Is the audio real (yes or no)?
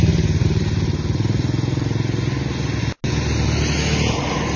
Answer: yes